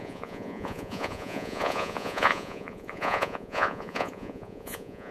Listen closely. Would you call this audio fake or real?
fake